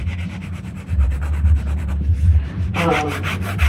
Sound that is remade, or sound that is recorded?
remade